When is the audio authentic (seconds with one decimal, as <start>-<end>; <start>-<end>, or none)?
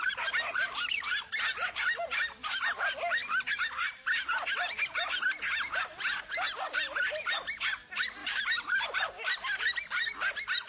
0.0-8.2; 8.8-10.7